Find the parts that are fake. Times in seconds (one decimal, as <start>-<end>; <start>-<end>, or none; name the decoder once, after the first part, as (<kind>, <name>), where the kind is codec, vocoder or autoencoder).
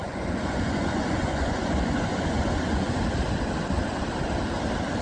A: 0.0-3.0 (vocoder, Vocos)